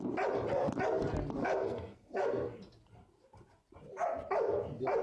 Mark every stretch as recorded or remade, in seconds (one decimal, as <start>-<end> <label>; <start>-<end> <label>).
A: 0.0-1.4 recorded; 1.4-2.6 remade; 2.6-5.0 recorded